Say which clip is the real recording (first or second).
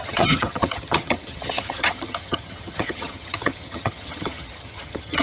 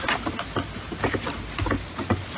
second